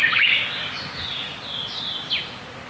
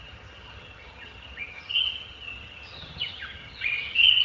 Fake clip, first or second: second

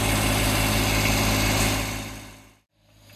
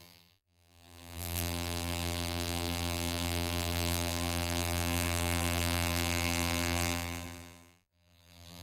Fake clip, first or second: second